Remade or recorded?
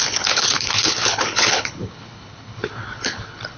remade